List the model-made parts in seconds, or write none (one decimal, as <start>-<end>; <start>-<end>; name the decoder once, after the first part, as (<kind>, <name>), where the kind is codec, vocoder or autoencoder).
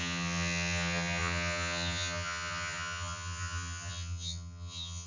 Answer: 0.0-5.1 (vocoder, HiFi-GAN)